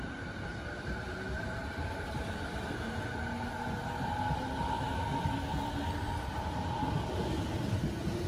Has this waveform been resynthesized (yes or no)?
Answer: no